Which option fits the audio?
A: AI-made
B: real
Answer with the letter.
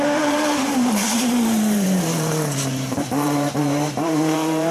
A